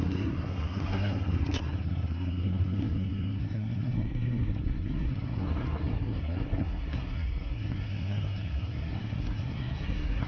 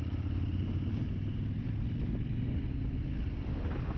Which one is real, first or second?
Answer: second